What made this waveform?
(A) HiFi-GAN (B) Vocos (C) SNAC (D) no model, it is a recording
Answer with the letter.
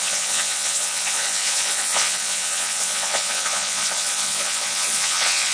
B